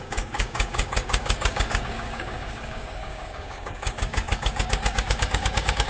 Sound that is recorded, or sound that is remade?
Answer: remade